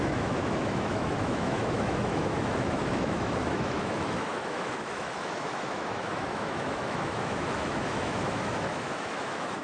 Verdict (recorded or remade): remade